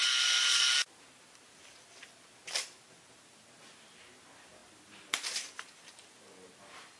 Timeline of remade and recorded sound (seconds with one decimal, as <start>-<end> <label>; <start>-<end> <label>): 0.0-7.0 recorded